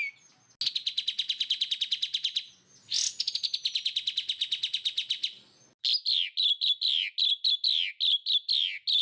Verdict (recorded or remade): recorded